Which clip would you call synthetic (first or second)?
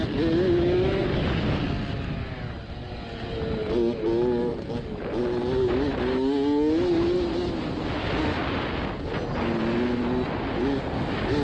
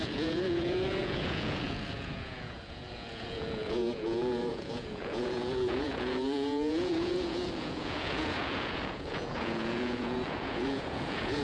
second